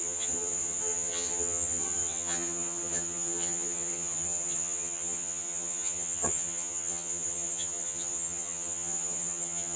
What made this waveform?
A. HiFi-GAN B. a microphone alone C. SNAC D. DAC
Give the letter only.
A